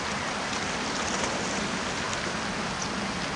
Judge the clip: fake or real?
real